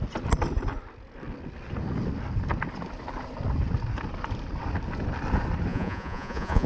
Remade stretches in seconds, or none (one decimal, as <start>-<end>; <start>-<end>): 5.7-6.7